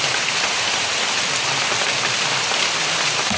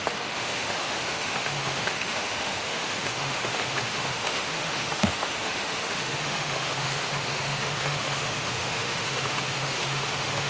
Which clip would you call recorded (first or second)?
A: first